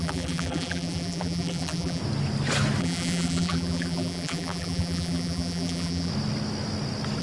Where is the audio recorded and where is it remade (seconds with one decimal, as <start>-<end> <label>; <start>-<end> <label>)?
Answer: 0.0-2.0 remade; 2.0-2.8 recorded; 2.8-6.1 remade; 6.1-7.2 recorded